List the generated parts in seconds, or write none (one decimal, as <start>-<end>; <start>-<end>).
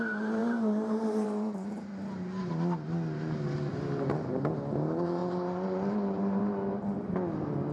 0.4-1.9; 5.2-6.4